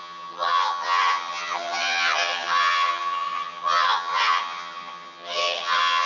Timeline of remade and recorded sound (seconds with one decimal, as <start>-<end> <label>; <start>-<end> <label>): 0.0-6.1 remade